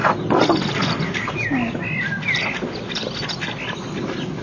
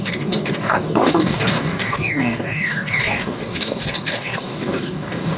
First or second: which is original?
first